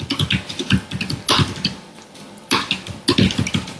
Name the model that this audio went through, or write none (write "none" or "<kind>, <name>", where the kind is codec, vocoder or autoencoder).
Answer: none